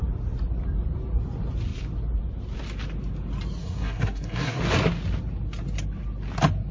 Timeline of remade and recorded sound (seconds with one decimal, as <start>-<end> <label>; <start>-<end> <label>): 0.0-3.6 recorded; 3.6-4.6 remade; 4.6-6.7 recorded